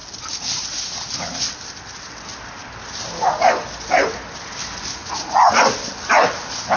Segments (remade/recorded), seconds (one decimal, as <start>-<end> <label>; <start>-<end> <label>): 0.0-5.0 recorded; 5.0-5.6 remade; 5.6-6.8 recorded